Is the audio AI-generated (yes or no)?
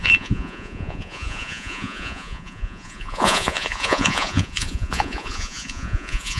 yes